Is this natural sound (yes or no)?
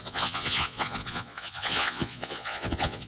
no